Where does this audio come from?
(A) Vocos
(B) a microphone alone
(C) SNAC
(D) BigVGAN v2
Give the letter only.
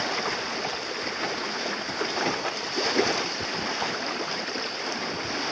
B